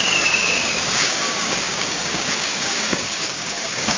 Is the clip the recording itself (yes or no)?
no